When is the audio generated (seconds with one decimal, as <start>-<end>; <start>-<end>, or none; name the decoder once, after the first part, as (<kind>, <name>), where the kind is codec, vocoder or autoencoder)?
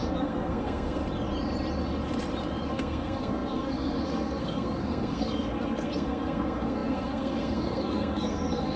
0.0-1.0 (codec, SNAC); 2.7-8.8